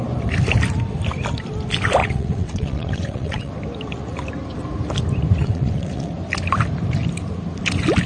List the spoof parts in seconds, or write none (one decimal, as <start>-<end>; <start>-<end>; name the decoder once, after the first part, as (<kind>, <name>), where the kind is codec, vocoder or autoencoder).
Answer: 2.0-3.5 (vocoder, WaveNeXt); 5.4-6.1